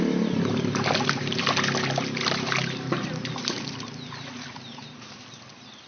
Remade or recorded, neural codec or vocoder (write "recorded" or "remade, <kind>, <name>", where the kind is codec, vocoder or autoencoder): recorded